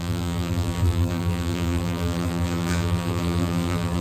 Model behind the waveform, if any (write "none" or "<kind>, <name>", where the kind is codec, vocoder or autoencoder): vocoder, BigVGAN v2